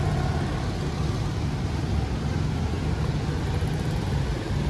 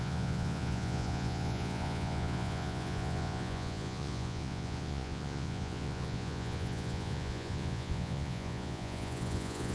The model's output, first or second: second